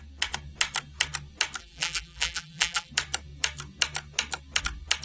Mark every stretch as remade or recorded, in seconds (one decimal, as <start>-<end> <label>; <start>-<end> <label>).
0.0-1.6 recorded; 1.6-2.9 remade; 2.9-5.0 recorded